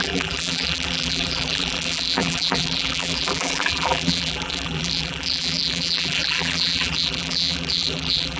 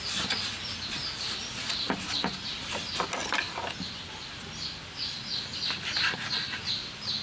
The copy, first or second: first